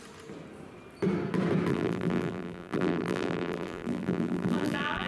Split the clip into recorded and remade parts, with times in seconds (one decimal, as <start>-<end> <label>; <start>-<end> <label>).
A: 0.0-1.7 recorded; 1.7-5.1 remade